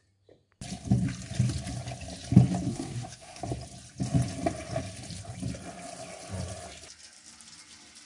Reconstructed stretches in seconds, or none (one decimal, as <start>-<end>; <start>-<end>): 2.7-3.4